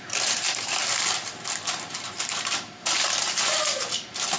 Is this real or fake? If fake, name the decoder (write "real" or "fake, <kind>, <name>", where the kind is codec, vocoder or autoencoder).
fake, vocoder, BigVGAN v2